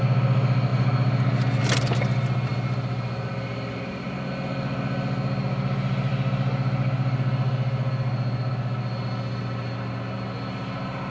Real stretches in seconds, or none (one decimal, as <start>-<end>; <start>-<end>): 0.0-11.1